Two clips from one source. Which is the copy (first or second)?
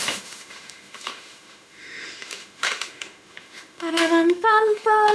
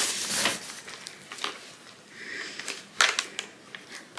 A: first